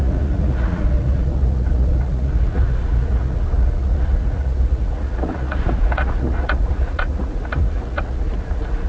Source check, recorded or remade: remade